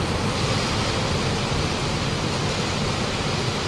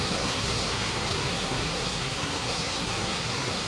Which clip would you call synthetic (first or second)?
second